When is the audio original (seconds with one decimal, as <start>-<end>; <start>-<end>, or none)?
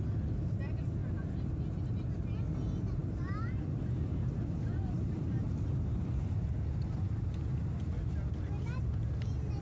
0.0-9.6